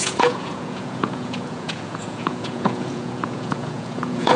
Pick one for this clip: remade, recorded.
remade